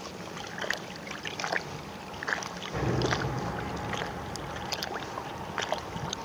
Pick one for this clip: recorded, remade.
recorded